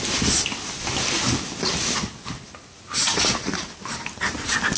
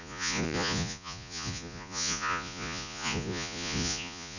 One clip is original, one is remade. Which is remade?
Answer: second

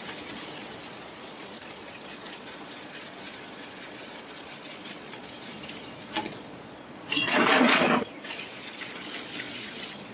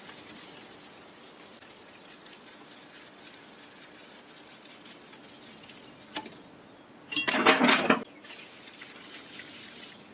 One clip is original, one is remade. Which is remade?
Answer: first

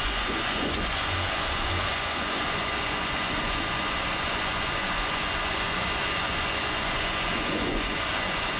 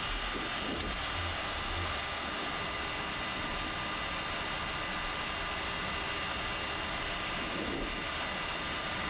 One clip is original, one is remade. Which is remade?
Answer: first